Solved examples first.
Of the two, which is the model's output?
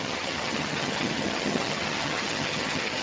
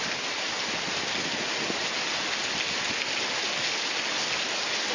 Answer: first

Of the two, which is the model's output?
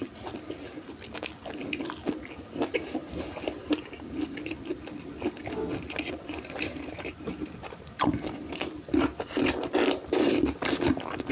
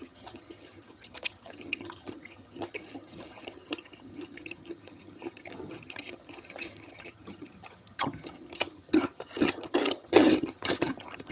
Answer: second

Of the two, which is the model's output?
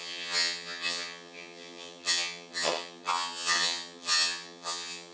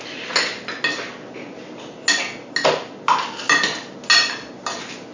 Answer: first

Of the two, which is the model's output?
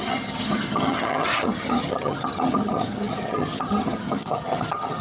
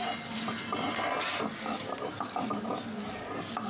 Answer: first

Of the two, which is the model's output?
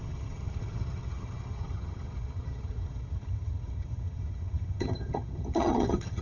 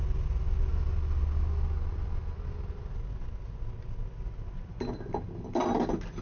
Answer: first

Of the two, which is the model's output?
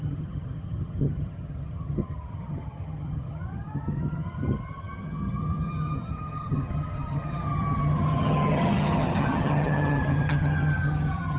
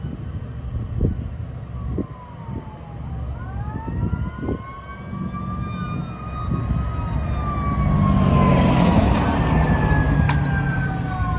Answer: first